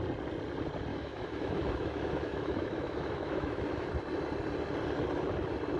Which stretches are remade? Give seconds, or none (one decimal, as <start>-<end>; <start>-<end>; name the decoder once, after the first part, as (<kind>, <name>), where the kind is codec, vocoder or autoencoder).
0.9-3.9 (autoencoder, DAC-VAE)